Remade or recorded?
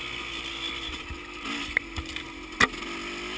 recorded